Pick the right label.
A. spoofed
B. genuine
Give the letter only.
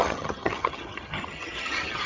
A